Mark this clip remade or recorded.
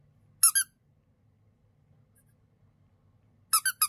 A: recorded